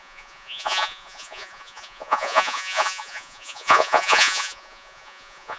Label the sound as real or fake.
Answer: fake